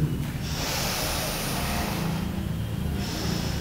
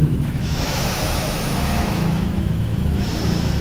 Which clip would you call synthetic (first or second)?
second